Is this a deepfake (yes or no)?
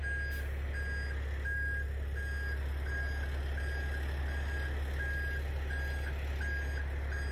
no